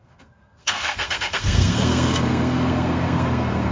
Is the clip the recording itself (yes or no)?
no